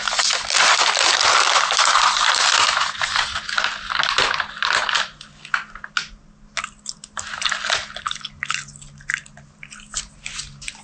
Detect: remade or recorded recorded